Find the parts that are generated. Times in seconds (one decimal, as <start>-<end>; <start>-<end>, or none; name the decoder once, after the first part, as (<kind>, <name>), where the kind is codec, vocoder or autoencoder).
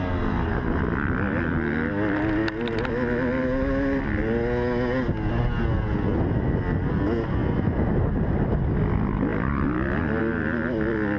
7.4-8.5 (vocoder, BigVGAN v2)